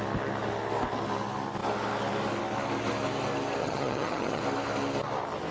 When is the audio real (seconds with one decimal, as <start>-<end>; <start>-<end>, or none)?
0.0-3.6; 4.4-5.5